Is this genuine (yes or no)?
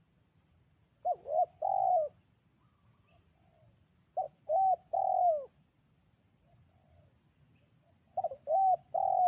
yes